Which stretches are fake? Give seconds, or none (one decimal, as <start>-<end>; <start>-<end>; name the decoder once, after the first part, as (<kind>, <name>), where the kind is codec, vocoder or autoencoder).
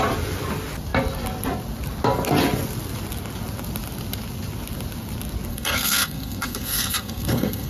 5.5-7.7 (codec, SNAC)